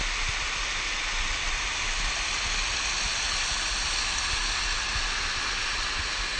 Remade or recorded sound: recorded